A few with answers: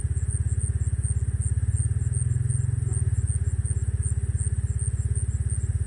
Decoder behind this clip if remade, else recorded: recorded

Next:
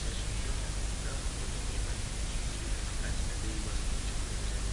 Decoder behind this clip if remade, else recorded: recorded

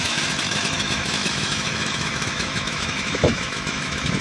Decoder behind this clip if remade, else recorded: remade, autoencoder, DAC-VAE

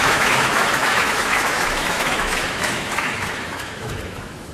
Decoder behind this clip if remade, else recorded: remade, autoencoder, DAC-VAE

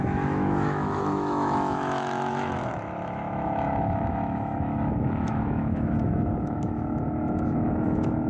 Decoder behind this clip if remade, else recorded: remade, autoencoder, DAC-VAE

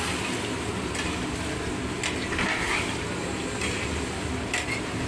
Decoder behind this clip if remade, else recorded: recorded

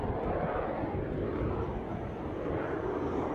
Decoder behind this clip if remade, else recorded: recorded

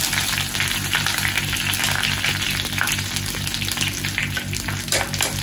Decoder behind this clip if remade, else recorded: recorded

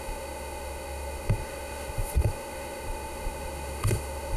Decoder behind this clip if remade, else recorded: remade, autoencoder, DAC-VAE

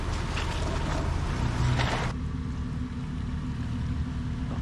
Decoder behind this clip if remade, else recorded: recorded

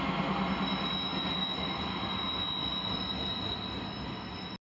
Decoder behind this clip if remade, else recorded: recorded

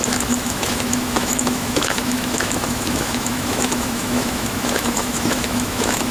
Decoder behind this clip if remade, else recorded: remade, autoencoder, DAC-VAE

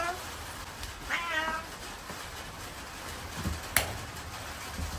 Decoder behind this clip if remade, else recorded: recorded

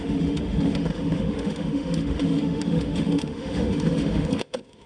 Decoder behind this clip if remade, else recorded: remade, autoencoder, DAC-VAE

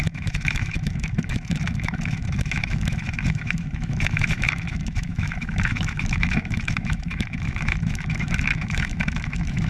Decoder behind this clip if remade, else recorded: remade, autoencoder, DAC-VAE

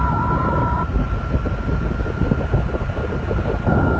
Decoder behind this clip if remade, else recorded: recorded